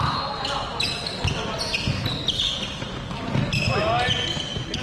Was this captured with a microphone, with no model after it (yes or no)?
yes